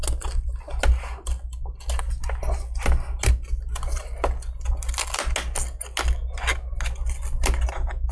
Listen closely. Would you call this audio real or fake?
real